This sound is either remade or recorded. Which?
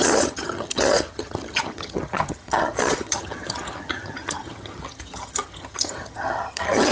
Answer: remade